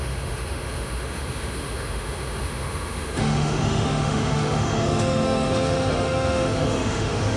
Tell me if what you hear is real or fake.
fake